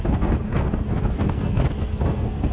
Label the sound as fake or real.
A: fake